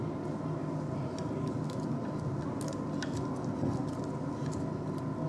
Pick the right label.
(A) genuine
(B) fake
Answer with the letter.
A